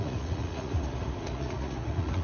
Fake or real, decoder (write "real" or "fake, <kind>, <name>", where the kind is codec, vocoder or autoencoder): fake, vocoder, Vocos